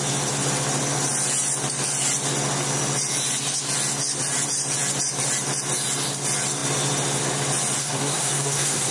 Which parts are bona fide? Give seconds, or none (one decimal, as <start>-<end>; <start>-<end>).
0.0-7.8